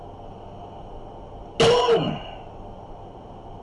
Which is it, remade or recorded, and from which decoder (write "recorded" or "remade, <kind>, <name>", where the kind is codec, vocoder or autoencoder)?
recorded